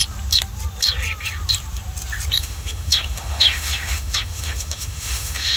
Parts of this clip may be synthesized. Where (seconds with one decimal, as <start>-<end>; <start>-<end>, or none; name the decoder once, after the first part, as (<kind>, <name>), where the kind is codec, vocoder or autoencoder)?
2.4-5.6 (autoencoder, DAC-VAE)